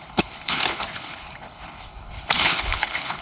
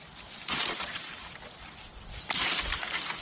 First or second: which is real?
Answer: second